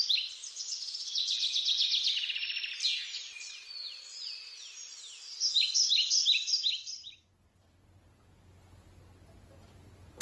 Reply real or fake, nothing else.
real